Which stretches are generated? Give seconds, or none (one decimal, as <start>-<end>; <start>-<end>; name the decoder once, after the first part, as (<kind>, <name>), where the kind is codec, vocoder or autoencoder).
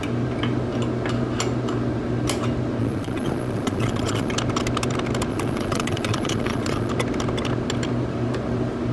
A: 2.8-4.3 (vocoder, Vocos); 5.3-6.9